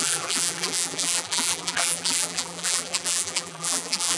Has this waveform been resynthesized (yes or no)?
yes